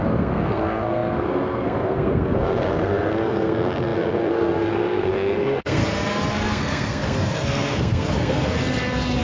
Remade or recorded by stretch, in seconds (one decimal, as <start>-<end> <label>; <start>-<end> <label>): 0.0-5.8 remade; 5.8-6.3 recorded; 6.3-8.4 remade; 8.4-9.2 recorded